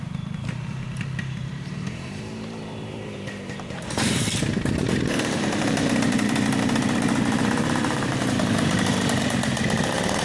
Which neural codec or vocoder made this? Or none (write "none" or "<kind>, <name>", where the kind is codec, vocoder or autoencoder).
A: vocoder, BigVGAN v2